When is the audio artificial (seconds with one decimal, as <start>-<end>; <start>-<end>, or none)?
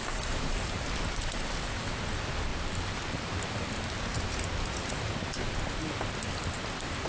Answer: 0.0-1.0; 2.5-5.0